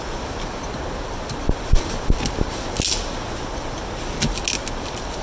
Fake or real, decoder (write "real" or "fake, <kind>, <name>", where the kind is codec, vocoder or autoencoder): real